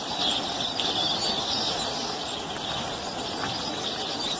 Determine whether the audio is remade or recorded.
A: recorded